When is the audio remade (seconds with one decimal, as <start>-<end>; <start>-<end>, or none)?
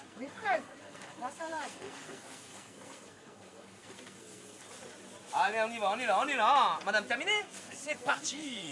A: 0.0-4.6; 7.4-8.7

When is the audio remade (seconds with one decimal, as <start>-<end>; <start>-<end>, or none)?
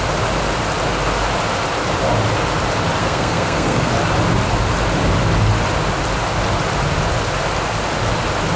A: 3.0-3.9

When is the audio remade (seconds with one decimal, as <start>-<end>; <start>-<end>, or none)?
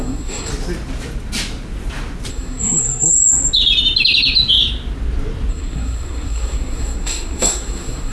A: 0.0-0.5; 2.3-3.1; 5.5-8.1